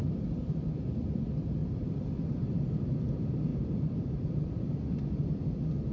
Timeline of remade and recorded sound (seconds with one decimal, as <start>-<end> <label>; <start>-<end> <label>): 0.0-1.2 remade; 1.2-1.6 recorded; 1.6-2.6 remade; 2.6-3.5 recorded; 3.5-4.9 remade; 4.9-5.9 recorded